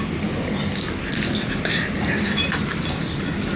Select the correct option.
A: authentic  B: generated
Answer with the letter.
A